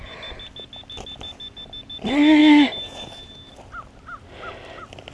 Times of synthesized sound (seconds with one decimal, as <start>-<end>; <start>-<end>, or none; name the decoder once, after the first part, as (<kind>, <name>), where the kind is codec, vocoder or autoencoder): none